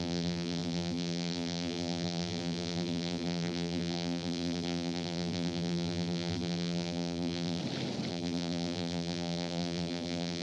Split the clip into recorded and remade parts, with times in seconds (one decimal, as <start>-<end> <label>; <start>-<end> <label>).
0.0-7.6 remade; 7.6-8.1 recorded; 8.1-10.4 remade

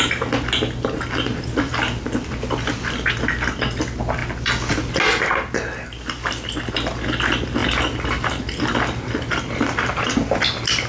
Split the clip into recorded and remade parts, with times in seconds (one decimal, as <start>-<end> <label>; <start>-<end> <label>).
0.0-10.9 recorded

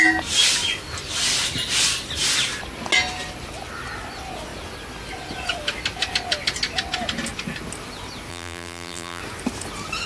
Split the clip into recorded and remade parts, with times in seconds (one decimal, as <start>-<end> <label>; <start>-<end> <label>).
0.0-8.3 recorded; 8.3-9.2 remade; 9.2-10.1 recorded